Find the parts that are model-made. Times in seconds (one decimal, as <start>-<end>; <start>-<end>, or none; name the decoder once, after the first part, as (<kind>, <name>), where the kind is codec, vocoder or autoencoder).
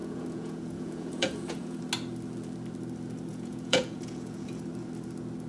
0.0-1.8 (vocoder, Vocos); 3.3-4.6